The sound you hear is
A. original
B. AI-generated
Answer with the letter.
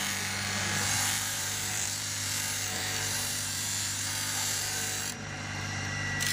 B